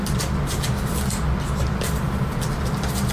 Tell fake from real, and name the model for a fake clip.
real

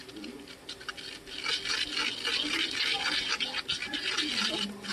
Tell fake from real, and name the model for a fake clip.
real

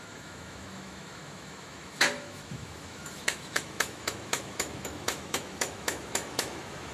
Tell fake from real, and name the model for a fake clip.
fake, autoencoder, DAC-VAE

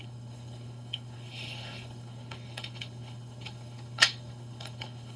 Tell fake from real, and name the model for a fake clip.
fake, codec, HILCodec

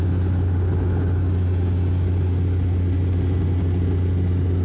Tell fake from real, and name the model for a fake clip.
real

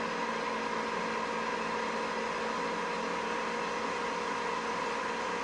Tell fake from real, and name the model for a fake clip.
real